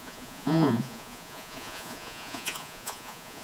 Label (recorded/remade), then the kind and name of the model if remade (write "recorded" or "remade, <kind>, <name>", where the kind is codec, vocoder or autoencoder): remade, vocoder, Vocos